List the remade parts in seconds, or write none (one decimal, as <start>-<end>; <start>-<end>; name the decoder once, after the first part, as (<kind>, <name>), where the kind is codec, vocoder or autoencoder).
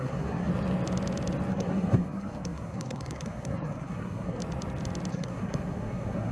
0.0-0.5 (codec, SNAC); 1.5-4.4; 5.1-6.3